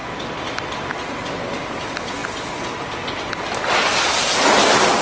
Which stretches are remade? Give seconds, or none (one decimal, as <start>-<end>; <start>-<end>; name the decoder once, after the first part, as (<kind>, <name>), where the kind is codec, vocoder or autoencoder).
none